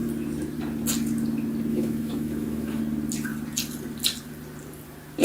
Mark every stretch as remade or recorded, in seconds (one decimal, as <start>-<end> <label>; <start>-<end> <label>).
0.0-1.7 recorded; 1.7-2.8 remade; 2.8-5.2 recorded